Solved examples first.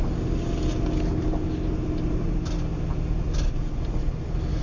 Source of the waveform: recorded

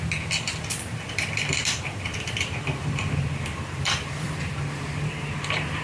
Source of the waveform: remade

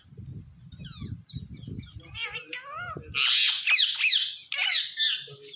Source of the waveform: recorded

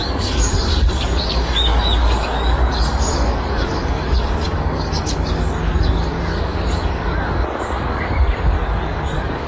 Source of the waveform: remade